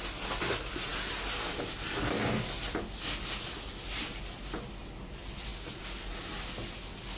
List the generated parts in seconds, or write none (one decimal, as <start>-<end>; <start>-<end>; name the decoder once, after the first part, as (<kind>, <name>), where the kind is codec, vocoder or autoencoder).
none